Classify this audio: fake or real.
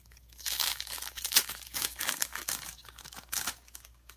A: fake